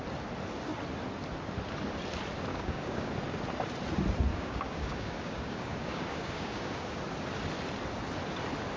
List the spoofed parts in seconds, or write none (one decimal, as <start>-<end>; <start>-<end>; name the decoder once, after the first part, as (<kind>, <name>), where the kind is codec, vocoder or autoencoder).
2.5-3.1 (codec, DAC); 4.3-7.0

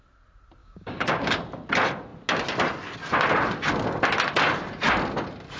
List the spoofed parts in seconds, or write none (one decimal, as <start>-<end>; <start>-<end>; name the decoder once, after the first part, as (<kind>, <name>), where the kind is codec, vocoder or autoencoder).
0.6-1.3 (codec, DAC)